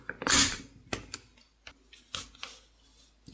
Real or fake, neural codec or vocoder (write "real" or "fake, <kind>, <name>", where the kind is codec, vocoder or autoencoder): real